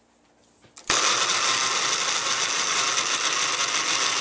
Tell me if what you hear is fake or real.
real